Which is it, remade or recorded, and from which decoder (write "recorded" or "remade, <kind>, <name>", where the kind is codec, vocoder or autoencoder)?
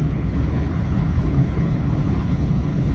remade, codec, HILCodec